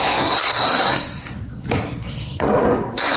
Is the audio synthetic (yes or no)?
yes